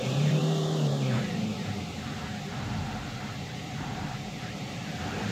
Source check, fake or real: fake